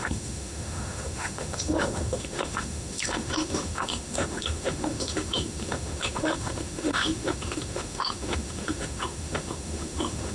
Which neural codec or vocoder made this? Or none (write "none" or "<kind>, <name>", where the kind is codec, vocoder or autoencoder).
autoencoder, DAC-VAE